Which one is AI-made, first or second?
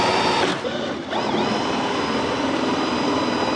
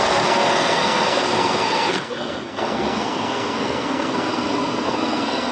second